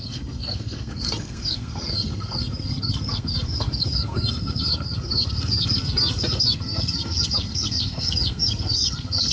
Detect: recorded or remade remade